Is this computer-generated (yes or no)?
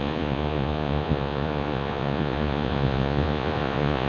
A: yes